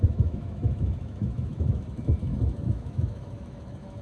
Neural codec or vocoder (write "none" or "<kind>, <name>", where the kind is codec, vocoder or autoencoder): autoencoder, DAC-VAE